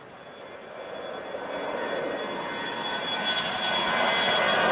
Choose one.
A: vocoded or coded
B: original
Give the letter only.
B